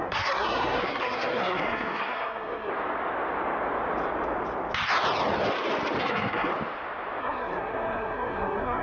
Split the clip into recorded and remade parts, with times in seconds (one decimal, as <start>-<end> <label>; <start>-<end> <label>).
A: 0.0-2.7 remade; 2.7-6.0 recorded; 6.0-6.5 remade; 6.5-7.2 recorded; 7.2-8.8 remade